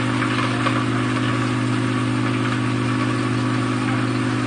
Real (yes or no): yes